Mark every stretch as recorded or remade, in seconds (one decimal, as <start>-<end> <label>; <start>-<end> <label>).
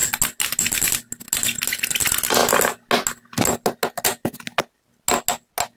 0.0-5.8 recorded